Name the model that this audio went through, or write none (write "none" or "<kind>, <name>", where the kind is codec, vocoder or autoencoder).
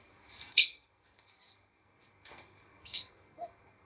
codec, SNAC